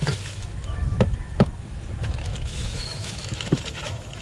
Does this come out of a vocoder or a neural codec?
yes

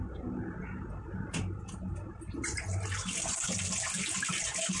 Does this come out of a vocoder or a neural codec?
no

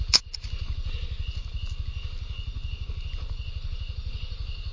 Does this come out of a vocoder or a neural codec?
no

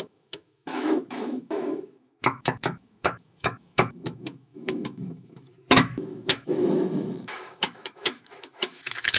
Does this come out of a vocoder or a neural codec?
yes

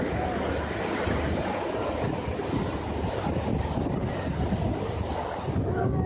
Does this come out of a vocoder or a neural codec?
no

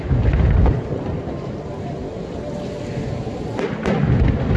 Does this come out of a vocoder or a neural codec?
no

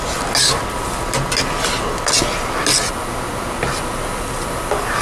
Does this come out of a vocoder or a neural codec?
no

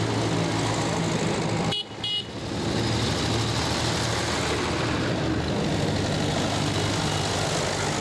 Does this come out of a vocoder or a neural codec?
no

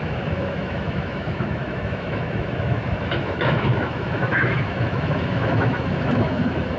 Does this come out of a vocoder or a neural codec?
yes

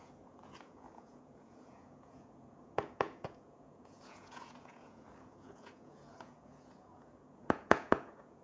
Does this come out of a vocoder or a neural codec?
yes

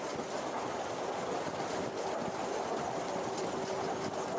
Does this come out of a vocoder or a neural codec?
no